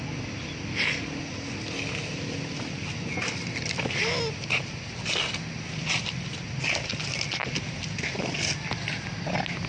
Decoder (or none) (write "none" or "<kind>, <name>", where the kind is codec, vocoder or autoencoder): none